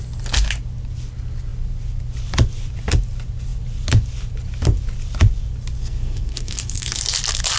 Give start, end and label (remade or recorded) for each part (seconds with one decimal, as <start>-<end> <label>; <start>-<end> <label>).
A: 0.0-5.8 recorded; 5.8-7.0 remade; 7.0-7.6 recorded